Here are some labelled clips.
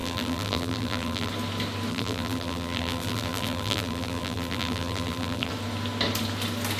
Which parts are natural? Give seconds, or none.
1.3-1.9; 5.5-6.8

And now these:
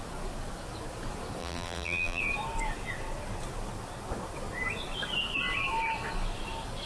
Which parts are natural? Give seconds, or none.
0.0-1.4; 2.2-6.9

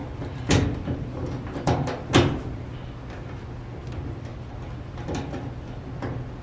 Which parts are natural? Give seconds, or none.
2.1-4.3; 5.9-6.4

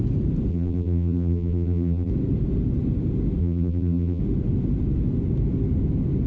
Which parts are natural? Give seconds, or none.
0.0-0.5; 2.1-3.4; 4.2-6.3

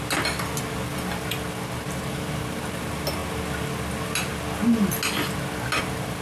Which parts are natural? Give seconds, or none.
0.0-6.2

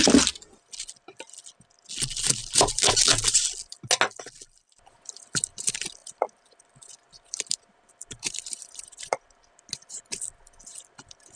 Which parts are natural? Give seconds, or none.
0.0-2.4; 2.9-6.0; 9.1-11.4